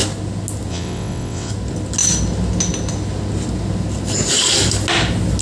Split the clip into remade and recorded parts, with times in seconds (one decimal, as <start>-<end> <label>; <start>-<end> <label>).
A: 0.0-0.7 recorded; 0.7-1.5 remade; 1.5-5.4 recorded